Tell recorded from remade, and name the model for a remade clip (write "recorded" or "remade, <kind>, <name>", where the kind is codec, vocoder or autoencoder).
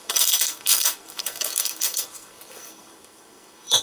remade, codec, SNAC